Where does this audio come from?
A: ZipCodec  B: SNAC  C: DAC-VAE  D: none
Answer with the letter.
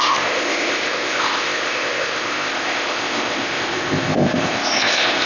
A